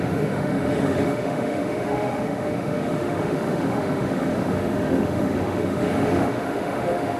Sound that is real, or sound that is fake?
fake